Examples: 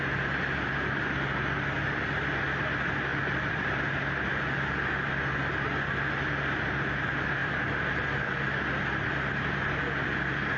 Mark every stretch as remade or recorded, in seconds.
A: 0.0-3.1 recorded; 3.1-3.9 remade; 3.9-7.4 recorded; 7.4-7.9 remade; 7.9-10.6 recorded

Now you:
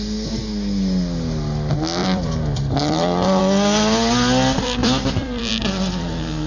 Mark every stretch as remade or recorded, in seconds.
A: 0.0-2.0 recorded; 2.0-3.4 remade; 3.4-4.8 recorded; 4.8-5.5 remade; 5.5-6.5 recorded

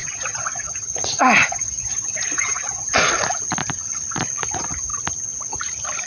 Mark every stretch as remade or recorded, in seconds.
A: 0.0-3.1 remade; 3.1-6.1 recorded

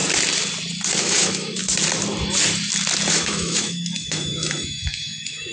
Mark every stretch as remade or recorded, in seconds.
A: 0.0-1.0 recorded; 1.0-1.6 remade; 1.6-3.1 recorded; 3.1-5.5 remade

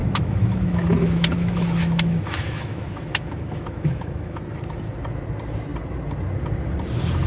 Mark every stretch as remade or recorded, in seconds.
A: 0.0-4.4 remade; 4.4-7.3 recorded